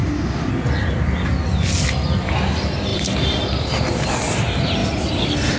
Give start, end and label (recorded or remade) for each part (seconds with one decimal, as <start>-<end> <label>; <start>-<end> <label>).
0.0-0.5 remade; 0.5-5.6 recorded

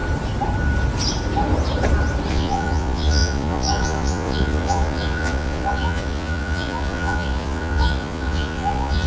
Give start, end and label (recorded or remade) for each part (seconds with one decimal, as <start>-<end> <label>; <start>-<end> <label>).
0.0-2.3 recorded; 2.3-9.1 remade

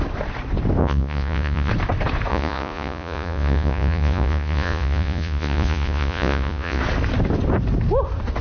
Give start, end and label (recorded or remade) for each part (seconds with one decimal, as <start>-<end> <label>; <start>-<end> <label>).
0.0-0.8 recorded; 0.8-1.7 remade; 1.7-2.3 recorded; 2.3-6.8 remade; 6.8-8.4 recorded

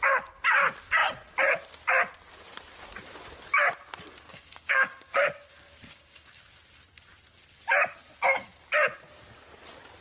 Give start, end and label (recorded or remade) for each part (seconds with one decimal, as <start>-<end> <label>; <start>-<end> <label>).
0.0-4.3 recorded; 4.3-6.4 remade; 6.4-10.0 recorded

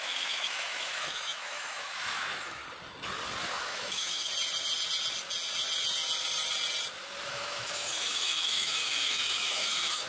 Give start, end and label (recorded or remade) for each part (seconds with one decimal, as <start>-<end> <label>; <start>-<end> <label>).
0.0-2.6 remade; 2.6-3.5 recorded; 3.5-4.3 remade; 4.3-7.3 recorded; 7.3-10.1 remade